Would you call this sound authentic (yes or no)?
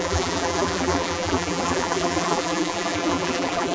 no